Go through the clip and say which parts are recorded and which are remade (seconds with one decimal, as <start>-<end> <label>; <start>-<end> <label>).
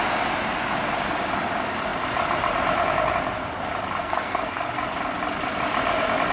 0.0-4.0 recorded; 4.0-4.6 remade; 4.6-6.3 recorded